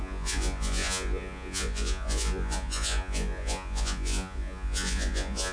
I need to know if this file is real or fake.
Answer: fake